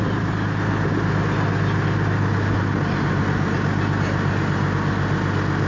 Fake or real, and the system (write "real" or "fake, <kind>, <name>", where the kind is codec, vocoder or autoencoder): real